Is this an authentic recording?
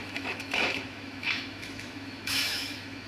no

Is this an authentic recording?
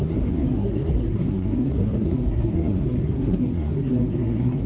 no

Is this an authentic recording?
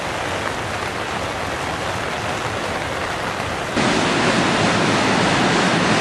yes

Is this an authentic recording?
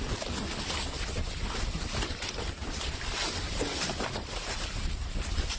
yes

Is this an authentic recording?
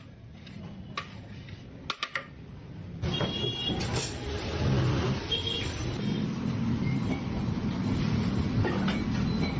yes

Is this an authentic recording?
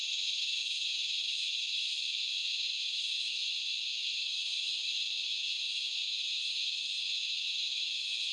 no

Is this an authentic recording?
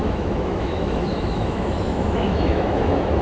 no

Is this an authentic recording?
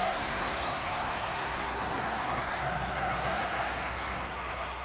no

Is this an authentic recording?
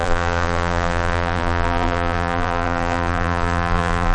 no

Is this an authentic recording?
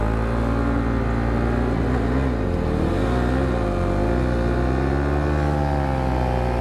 yes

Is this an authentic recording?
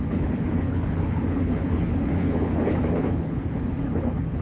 no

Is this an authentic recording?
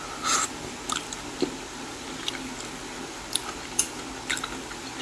no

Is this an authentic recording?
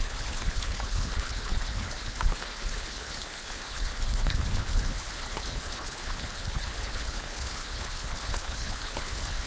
no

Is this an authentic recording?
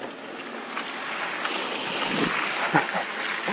yes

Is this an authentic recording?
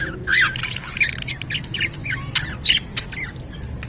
yes